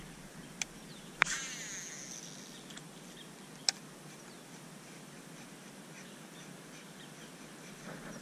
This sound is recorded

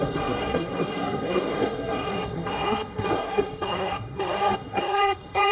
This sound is remade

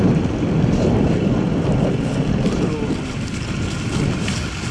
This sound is recorded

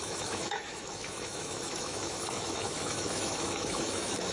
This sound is remade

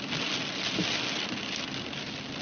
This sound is recorded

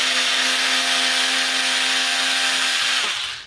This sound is recorded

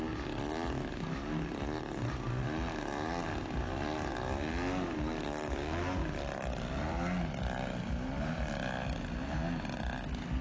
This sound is recorded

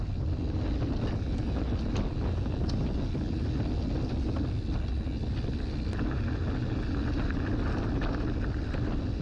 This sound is recorded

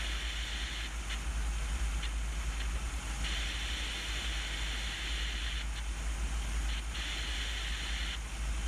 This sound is recorded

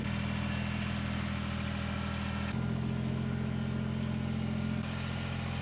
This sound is recorded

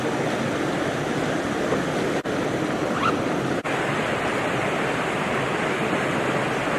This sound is recorded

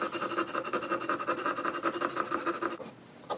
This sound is recorded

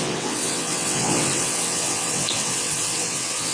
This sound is remade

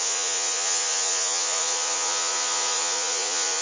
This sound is remade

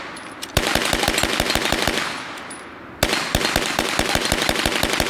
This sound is recorded